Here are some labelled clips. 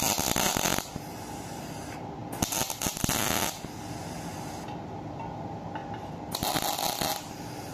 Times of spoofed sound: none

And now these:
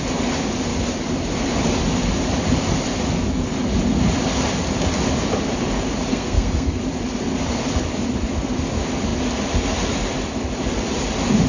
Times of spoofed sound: 6.1-6.8 (codec, SNAC)

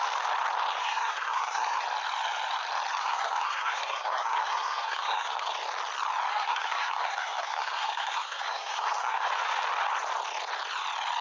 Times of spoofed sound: 0.8-1.8 (codec, SNAC); 3.0-5.5; 6.3-9.3

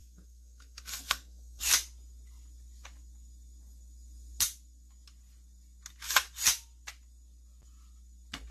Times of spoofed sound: 0.0-1.6 (codec, SNAC)

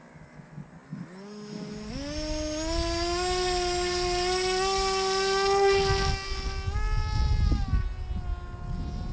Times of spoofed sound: none

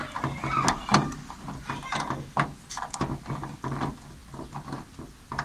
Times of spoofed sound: none

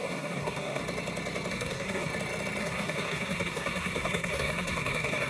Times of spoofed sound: 0.0-0.8 (codec, SNAC); 1.5-2.1; 2.6-5.3